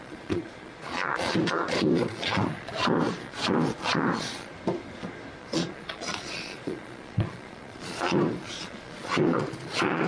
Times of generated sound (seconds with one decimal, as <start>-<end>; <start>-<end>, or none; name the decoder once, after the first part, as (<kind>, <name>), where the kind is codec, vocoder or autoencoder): 0.0-4.5 (vocoder, Vocos); 5.4-10.1